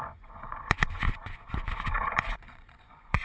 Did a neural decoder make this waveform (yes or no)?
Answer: yes